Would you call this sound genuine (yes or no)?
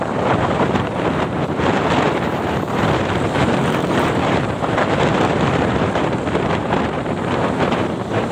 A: no